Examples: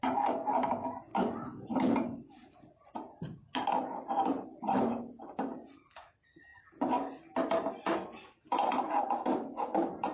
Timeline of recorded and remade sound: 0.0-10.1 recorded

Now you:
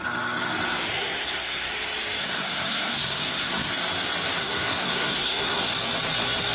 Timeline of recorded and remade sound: 0.0-0.9 recorded; 0.9-1.7 remade; 1.7-2.2 recorded; 2.2-3.7 remade; 3.7-4.4 recorded; 4.4-5.7 remade; 5.7-6.5 recorded

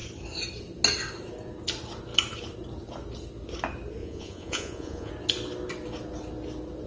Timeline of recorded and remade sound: 0.0-4.0 recorded; 4.0-5.1 remade; 5.1-6.9 recorded